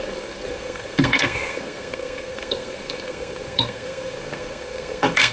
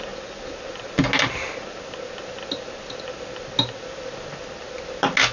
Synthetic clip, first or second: first